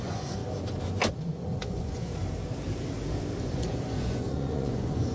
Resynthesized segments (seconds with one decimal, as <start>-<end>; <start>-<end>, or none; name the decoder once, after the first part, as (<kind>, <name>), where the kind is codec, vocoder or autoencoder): 0.0-0.4 (vocoder, Vocos); 1.1-2.1; 3.4-5.1